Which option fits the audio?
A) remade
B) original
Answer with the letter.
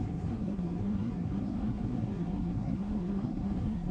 A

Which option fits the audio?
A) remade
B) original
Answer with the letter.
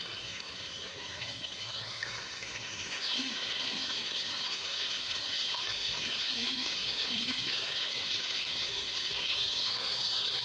A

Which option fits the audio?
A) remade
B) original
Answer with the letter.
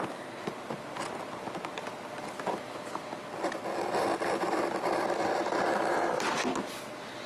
B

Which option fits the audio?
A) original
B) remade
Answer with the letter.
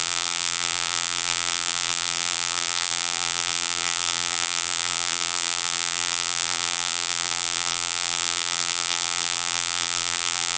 B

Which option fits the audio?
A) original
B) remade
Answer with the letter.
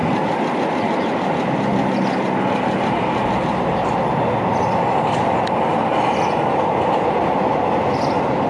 A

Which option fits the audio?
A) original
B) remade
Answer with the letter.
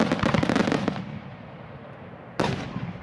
A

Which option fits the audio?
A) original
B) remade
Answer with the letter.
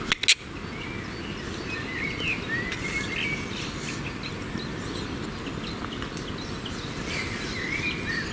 A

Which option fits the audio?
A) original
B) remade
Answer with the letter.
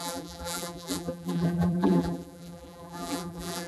B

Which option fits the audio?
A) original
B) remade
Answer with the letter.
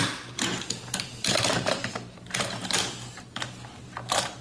B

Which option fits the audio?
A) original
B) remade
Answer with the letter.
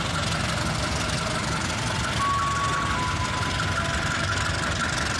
A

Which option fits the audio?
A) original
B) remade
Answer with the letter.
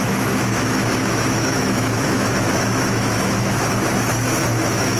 B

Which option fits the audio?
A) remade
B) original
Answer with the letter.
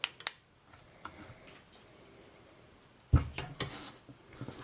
B